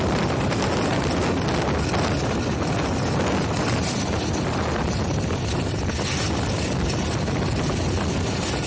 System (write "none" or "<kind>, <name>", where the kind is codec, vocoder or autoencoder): none